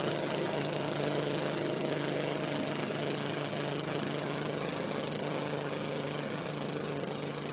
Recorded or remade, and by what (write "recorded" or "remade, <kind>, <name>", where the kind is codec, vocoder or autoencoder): remade, vocoder, HiFi-GAN